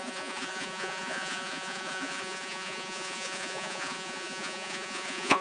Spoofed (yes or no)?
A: yes